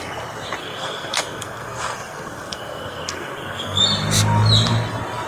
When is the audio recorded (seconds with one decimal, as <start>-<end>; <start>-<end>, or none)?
0.0-0.6; 3.8-5.3